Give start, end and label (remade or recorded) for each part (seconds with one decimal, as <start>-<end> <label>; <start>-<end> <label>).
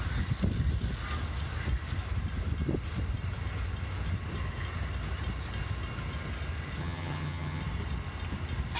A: 0.0-6.8 recorded; 6.8-7.6 remade; 7.6-8.8 recorded